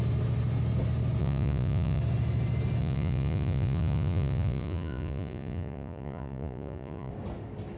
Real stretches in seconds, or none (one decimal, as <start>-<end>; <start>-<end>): 0.0-1.2; 2.0-2.8; 7.1-7.8